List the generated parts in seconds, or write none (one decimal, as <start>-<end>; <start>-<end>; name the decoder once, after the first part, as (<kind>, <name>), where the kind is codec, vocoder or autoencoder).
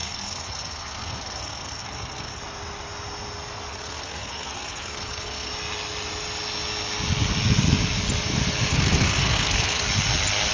0.0-2.4 (codec, SNAC); 3.7-5.5; 8.7-9.8